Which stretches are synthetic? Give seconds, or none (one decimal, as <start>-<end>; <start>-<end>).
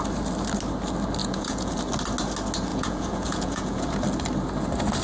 1.2-1.8; 2.7-4.0